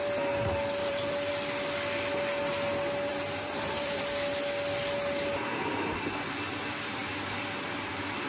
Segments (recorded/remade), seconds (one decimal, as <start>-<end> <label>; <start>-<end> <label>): 0.0-0.8 recorded; 0.8-1.3 remade; 1.3-3.1 recorded; 3.1-4.0 remade; 4.0-8.3 recorded